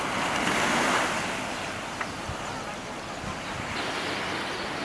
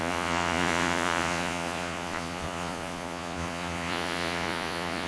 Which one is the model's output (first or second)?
second